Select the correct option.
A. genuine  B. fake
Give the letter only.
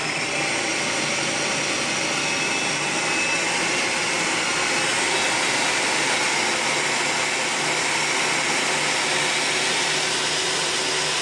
A